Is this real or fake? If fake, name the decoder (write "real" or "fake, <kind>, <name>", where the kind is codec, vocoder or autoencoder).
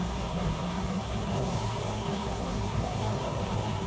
fake, codec, SNAC